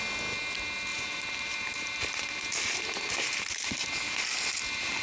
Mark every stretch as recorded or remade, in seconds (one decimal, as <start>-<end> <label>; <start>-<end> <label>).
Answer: 0.0-0.9 recorded; 0.9-3.9 remade; 3.9-5.0 recorded